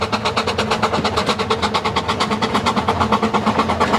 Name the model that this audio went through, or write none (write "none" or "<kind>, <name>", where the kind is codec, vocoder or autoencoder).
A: none